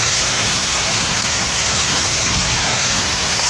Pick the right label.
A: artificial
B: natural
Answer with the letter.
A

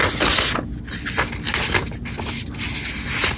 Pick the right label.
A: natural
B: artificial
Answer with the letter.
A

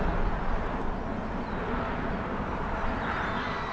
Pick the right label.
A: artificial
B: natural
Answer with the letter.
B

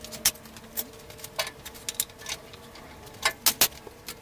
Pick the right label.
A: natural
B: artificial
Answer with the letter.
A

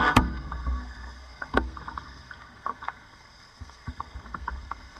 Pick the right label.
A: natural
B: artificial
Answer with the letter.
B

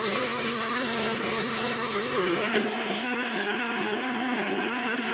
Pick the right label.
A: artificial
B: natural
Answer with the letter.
A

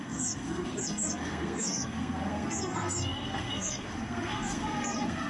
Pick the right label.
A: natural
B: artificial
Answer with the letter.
B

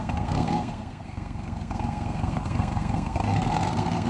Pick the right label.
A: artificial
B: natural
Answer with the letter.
A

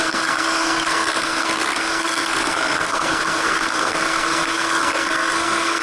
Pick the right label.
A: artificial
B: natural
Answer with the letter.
A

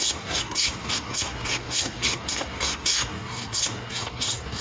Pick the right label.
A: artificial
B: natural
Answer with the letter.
A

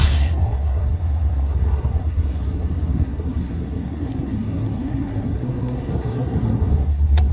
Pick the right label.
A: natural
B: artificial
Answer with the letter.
B